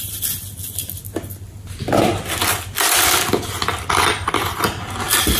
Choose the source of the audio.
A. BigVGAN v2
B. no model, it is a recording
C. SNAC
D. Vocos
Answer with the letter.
B